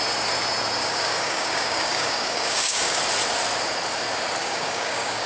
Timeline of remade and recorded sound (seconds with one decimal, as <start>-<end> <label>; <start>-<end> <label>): 0.0-0.8 recorded; 0.8-3.0 remade; 3.0-4.4 recorded; 4.4-5.3 remade